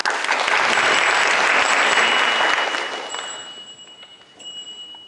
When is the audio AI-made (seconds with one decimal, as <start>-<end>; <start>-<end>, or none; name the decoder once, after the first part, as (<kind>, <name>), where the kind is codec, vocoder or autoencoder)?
none